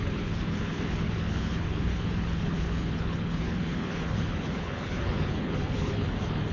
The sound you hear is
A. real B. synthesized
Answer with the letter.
B